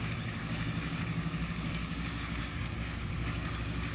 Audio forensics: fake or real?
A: fake